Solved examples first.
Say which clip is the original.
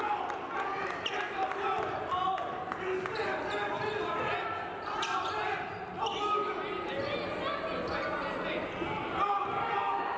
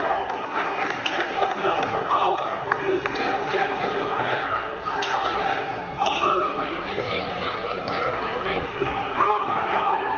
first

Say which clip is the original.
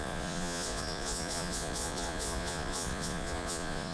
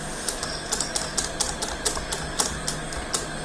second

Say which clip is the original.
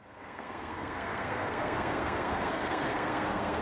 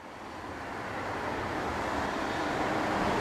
second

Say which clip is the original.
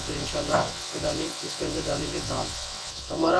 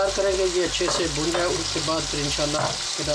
second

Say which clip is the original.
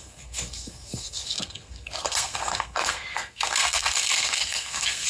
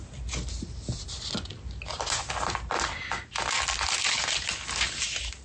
second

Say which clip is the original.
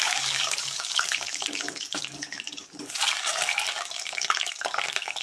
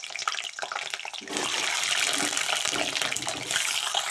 second